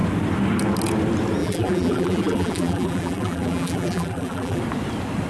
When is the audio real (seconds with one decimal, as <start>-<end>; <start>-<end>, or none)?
0.0-1.4; 4.6-5.3